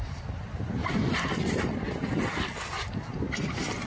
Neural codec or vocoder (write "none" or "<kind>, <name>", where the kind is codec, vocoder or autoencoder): none